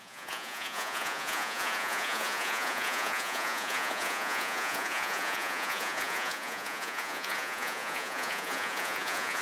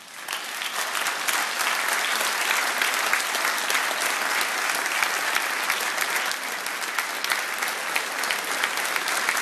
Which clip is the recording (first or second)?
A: second